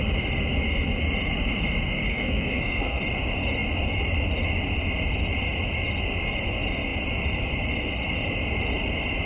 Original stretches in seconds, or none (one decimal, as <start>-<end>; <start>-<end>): 0.0-2.1; 3.0-9.3